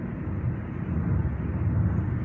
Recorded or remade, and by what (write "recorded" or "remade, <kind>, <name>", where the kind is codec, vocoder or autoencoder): recorded